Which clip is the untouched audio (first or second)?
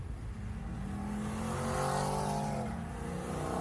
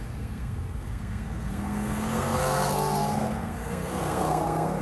first